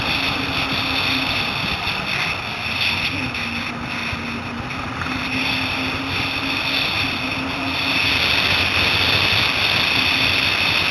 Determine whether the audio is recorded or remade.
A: recorded